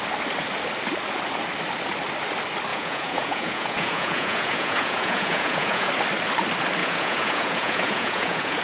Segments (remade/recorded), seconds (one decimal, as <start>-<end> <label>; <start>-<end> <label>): 0.0-2.7 recorded; 2.7-5.9 remade; 5.9-6.8 recorded; 6.8-8.6 remade